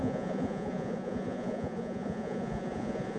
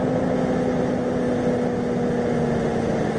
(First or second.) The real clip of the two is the second